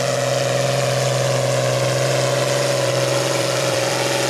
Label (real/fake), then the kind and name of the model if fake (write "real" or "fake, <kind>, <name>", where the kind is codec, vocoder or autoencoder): fake, vocoder, BigVGAN v2